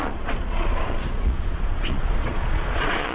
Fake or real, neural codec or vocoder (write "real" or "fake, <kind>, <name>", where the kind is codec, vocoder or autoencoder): fake, vocoder, Vocos